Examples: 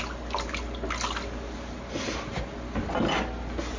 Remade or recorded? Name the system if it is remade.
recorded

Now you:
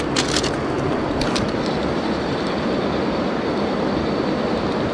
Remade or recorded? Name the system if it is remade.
recorded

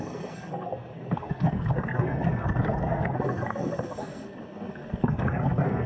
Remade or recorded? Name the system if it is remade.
remade, codec, SNAC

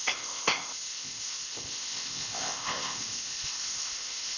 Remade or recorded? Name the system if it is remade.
remade, codec, ZipCodec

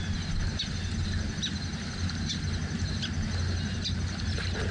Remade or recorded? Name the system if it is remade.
recorded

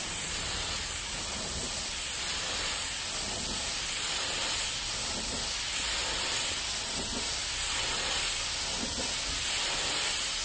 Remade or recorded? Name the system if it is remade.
recorded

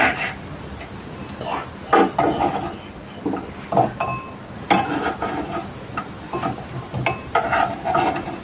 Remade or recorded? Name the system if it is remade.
recorded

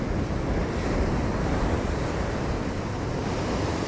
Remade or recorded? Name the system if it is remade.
recorded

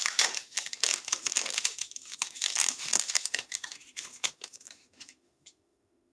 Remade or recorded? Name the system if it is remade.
remade, autoencoder, DAC-VAE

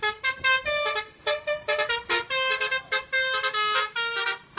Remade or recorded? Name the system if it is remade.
recorded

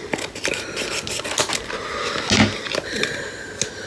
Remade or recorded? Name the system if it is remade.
recorded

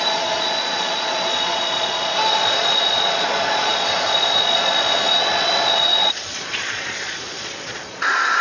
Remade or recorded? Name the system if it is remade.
remade, vocoder, Vocos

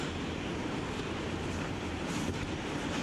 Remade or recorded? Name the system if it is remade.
remade, vocoder, BigVGAN v2